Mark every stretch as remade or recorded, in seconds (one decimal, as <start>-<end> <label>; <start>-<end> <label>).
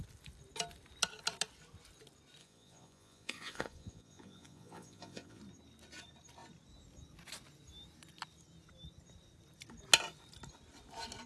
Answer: 0.0-2.4 recorded; 2.4-5.4 remade; 5.4-11.3 recorded